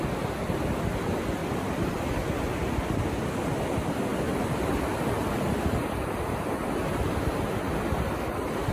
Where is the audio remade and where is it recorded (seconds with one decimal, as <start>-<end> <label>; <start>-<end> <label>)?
0.0-1.4 recorded; 1.4-3.0 remade; 3.0-4.1 recorded; 4.1-4.9 remade; 4.9-8.7 recorded